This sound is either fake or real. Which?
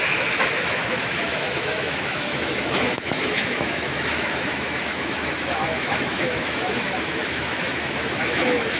fake